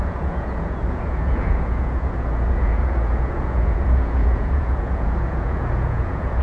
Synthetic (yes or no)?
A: yes